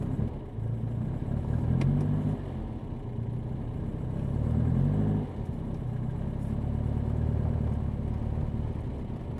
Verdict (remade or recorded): recorded